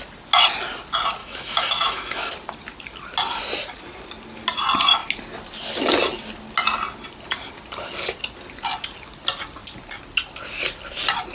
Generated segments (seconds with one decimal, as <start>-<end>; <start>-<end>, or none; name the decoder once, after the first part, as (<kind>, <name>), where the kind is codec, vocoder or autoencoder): 1.2-2.3 (autoencoder, DAC-VAE)